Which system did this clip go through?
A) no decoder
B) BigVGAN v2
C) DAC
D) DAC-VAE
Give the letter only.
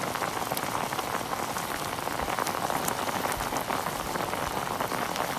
A